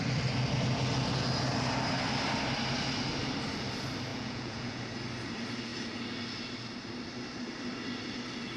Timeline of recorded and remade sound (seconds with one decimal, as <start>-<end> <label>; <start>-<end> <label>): 0.0-4.1 recorded; 4.1-4.8 remade; 4.8-8.6 recorded